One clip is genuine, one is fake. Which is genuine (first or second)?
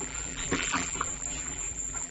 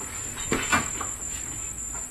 second